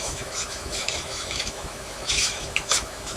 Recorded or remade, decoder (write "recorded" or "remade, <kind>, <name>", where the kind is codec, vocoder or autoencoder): remade, autoencoder, DAC-VAE